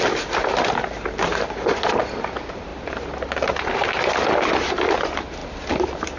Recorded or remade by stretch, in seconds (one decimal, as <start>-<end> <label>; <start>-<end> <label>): 0.0-1.3 recorded; 1.3-2.0 remade; 2.0-6.2 recorded